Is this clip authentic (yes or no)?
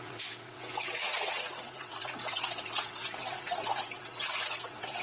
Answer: no